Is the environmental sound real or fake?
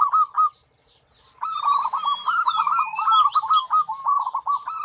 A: real